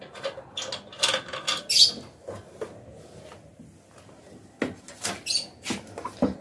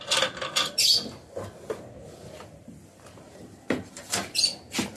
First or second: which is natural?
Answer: first